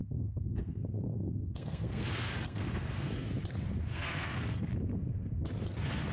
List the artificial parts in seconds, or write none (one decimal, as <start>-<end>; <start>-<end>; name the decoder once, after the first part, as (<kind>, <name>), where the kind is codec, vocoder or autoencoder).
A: 0.0-3.3 (codec, SNAC); 3.9-4.7